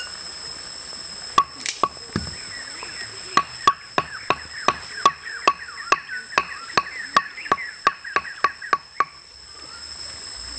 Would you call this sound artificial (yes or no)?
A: no